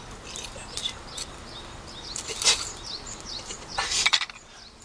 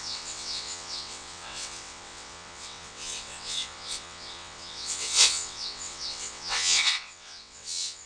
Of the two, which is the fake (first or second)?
second